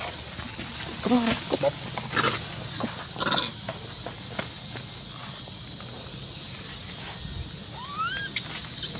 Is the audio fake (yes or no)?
no